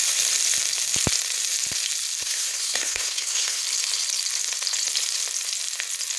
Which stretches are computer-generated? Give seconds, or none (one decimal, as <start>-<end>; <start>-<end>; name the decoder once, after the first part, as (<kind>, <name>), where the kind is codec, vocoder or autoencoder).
2.2-3.6 (codec, SNAC)